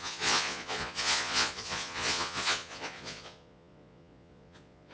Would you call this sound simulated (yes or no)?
yes